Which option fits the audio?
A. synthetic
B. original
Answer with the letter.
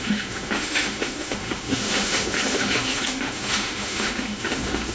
A